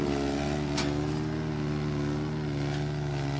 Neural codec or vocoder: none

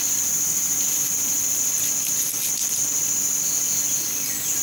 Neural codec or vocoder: none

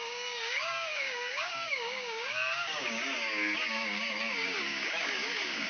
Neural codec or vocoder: codec, DAC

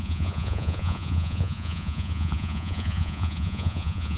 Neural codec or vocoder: vocoder, Vocos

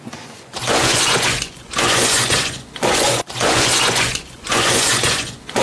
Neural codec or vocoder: vocoder, Vocos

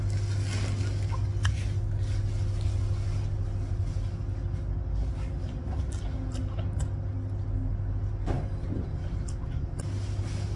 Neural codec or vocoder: none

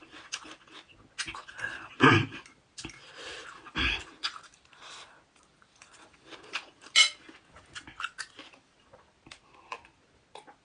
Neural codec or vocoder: none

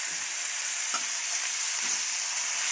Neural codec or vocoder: none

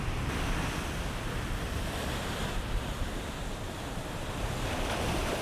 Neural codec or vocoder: none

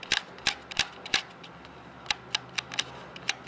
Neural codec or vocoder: none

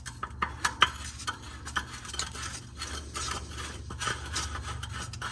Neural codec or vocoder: none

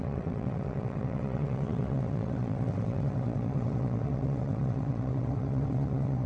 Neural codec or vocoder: vocoder, WaveNeXt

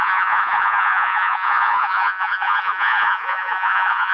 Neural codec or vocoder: vocoder, Vocos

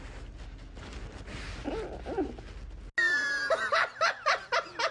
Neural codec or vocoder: none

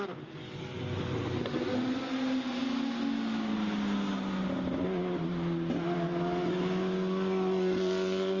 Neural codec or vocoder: none